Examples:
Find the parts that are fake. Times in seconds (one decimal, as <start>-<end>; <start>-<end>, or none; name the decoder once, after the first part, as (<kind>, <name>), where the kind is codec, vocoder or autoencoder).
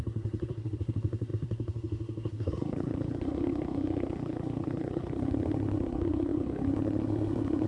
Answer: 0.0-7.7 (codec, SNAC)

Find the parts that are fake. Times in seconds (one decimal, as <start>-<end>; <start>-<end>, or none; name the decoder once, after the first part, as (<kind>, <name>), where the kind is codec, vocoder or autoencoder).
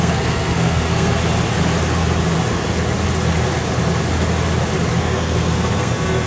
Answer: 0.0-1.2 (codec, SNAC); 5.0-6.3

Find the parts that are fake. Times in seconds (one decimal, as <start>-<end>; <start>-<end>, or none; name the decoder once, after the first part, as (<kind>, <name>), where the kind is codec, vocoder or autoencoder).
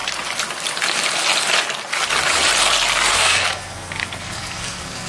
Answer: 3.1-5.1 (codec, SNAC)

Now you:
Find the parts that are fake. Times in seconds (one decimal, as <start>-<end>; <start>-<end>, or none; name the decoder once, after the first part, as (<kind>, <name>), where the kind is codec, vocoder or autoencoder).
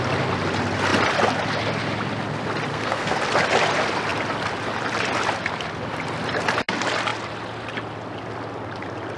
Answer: 2.7-3.2 (codec, SNAC)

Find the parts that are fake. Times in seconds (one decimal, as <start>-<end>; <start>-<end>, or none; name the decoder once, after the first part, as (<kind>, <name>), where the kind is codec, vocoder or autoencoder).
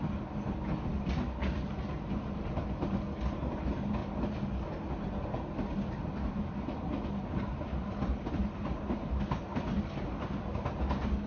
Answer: none